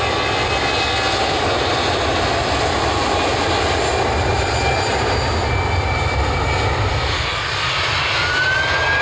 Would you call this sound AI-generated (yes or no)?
no